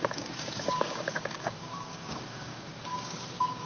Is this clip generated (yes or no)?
yes